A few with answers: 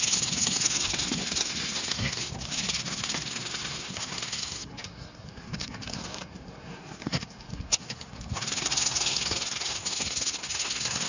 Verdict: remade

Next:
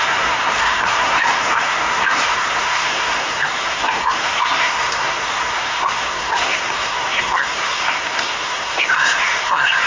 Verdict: remade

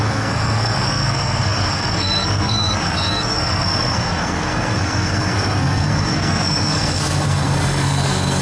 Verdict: remade